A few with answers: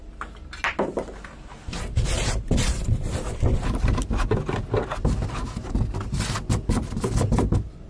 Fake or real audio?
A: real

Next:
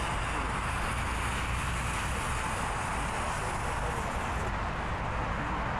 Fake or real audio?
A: real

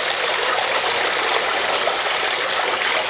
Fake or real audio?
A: real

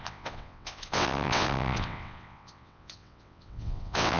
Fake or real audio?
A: fake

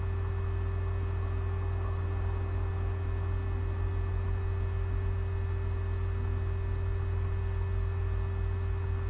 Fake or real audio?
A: real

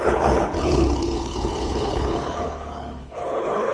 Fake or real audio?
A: fake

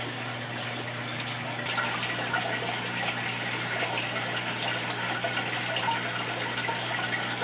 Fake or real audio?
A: real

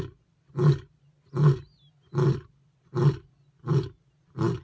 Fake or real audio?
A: real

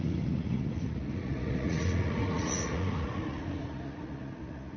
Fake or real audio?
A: fake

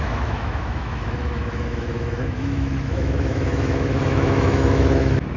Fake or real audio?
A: fake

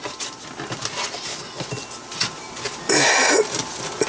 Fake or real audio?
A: real